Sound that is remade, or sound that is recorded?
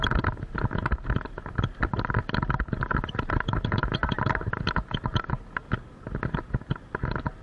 recorded